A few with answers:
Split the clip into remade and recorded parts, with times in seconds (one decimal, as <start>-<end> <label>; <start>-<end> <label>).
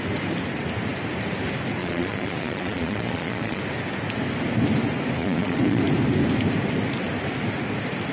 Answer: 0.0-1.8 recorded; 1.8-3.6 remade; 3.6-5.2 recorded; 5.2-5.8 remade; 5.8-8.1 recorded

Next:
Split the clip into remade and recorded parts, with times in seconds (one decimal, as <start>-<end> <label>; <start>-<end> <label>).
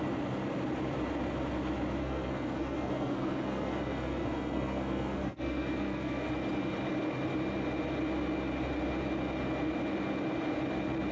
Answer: 0.0-2.0 recorded; 2.0-6.3 remade; 6.3-11.1 recorded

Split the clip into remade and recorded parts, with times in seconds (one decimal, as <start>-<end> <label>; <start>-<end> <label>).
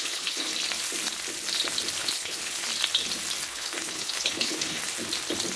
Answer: 0.0-0.5 remade; 0.5-2.0 recorded; 2.0-2.7 remade; 2.7-3.5 recorded; 3.5-4.8 remade; 4.8-5.6 recorded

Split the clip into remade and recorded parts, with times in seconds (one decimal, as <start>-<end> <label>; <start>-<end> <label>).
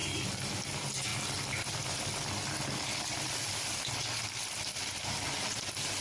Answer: 0.0-6.0 recorded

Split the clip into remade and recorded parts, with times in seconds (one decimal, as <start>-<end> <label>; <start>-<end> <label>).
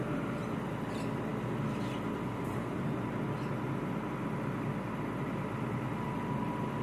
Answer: 0.0-6.8 recorded